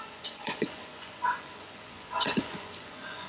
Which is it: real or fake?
fake